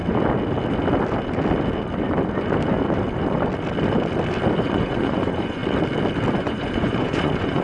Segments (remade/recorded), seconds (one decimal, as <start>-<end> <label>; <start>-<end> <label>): 0.0-4.6 recorded; 4.6-5.6 remade; 5.6-6.3 recorded; 6.3-7.6 remade